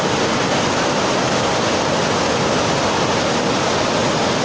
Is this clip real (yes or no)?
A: yes